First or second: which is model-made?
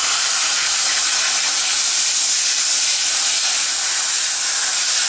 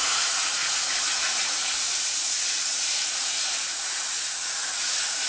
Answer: second